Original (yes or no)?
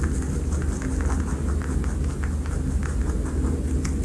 yes